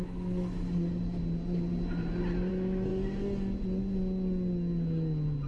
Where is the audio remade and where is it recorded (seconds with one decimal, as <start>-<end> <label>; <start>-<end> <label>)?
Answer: 0.0-1.2 remade; 1.2-2.5 recorded; 2.5-2.9 remade; 2.9-5.5 recorded